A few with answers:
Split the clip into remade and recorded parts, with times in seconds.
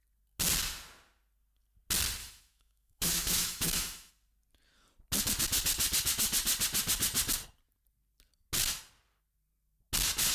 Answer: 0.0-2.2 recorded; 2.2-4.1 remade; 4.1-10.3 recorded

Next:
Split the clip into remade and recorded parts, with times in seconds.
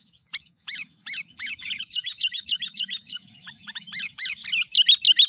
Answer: 0.0-4.4 remade; 4.4-5.3 recorded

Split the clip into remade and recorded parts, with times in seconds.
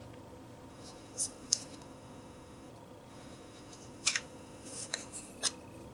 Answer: 0.0-0.7 recorded; 0.7-2.7 remade; 2.7-3.1 recorded; 3.1-5.3 remade; 5.3-5.9 recorded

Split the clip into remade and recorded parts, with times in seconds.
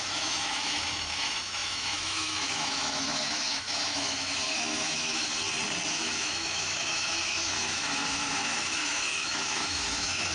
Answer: 0.0-5.3 remade; 5.3-5.9 recorded; 5.9-10.3 remade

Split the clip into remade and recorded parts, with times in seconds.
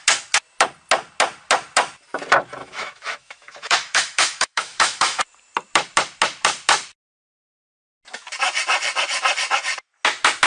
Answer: 0.0-2.6 recorded; 2.6-5.2 remade; 5.2-10.5 recorded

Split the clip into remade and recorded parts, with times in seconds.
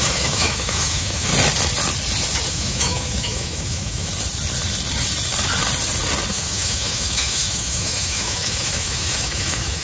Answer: 0.0-1.3 remade; 1.3-2.5 recorded; 2.5-4.1 remade; 4.1-6.3 recorded; 6.3-9.8 remade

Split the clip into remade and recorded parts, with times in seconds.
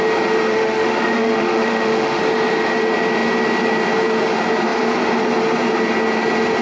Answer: 0.0-0.5 recorded; 0.5-2.2 remade; 2.2-6.6 recorded